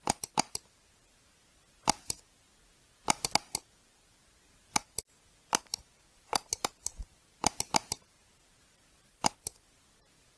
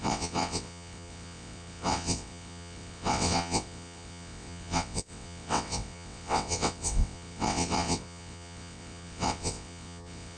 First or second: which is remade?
second